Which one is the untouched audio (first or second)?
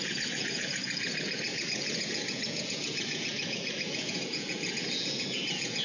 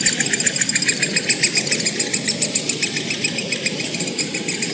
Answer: second